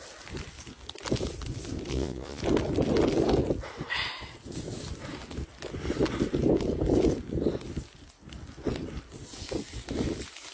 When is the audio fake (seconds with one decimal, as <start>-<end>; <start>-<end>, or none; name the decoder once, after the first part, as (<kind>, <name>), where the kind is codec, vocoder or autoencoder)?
1.9-2.4 (vocoder, Vocos)

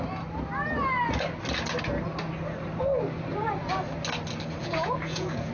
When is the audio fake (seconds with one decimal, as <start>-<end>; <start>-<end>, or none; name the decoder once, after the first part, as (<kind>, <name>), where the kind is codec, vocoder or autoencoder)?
4.6-5.5 (vocoder, Vocos)

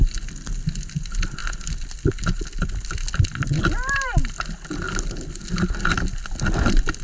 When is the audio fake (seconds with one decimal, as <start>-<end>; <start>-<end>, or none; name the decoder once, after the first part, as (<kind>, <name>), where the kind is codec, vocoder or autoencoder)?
none

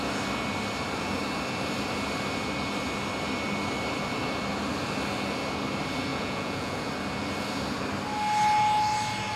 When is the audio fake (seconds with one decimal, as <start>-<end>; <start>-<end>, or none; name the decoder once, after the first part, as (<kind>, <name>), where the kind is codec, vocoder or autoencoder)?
6.1-6.9 (vocoder, Vocos)